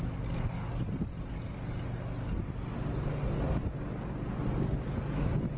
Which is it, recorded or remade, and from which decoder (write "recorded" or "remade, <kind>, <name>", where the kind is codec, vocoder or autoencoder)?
recorded